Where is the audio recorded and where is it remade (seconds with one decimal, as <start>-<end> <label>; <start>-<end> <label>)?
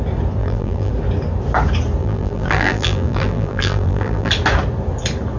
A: 0.0-0.4 recorded; 0.4-0.9 remade; 0.9-2.0 recorded; 2.0-4.3 remade; 4.3-5.4 recorded